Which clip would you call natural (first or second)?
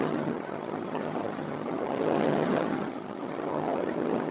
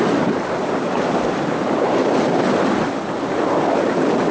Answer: second